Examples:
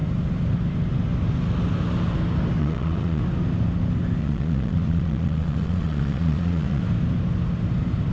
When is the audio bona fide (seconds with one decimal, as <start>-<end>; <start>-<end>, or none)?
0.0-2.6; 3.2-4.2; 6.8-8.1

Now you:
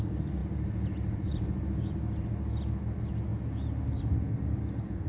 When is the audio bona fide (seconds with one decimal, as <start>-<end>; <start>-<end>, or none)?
0.0-5.1

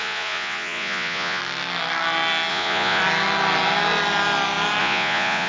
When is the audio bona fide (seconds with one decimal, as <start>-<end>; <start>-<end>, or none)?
1.4-2.5; 3.0-4.8

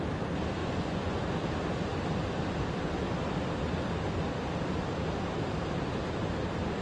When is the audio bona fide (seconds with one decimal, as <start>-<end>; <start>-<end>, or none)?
0.0-0.6; 1.2-6.8

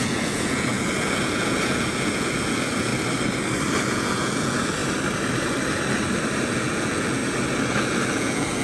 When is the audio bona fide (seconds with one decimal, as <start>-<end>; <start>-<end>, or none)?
2.9-3.8; 4.8-6.5; 7.2-7.7

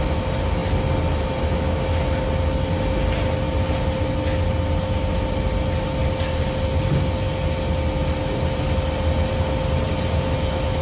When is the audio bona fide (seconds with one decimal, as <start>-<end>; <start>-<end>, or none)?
0.0-10.8

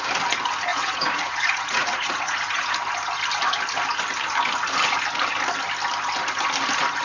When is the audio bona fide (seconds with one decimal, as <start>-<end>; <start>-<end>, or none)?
0.0-0.7; 2.7-7.0

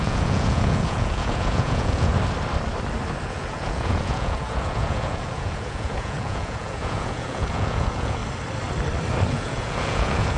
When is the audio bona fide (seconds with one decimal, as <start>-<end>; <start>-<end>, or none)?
2.1-3.2; 8.2-9.3